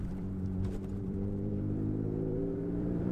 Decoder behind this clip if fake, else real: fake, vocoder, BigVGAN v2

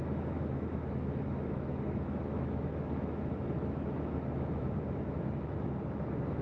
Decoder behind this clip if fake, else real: fake, autoencoder, DAC-VAE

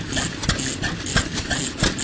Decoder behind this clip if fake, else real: real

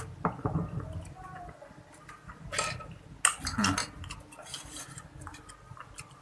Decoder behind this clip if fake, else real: real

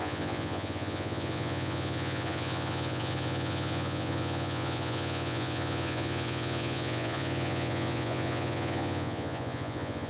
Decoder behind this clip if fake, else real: fake, vocoder, Vocos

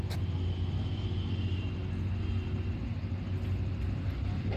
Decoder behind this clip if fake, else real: real